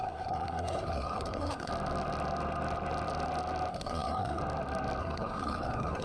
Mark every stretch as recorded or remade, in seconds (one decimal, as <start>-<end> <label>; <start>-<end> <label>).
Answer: 0.0-1.7 remade; 1.7-3.7 recorded; 3.7-4.4 remade; 4.4-5.0 recorded; 5.0-6.0 remade